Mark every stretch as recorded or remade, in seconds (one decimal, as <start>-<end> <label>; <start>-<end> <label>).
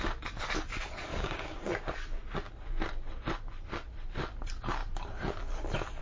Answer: 0.0-1.1 recorded; 1.1-1.7 remade; 1.7-6.0 recorded